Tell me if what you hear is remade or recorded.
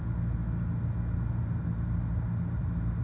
recorded